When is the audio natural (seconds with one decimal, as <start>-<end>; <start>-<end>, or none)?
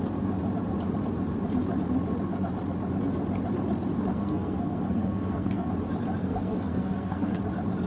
0.0-4.1; 5.7-6.2; 7.4-7.9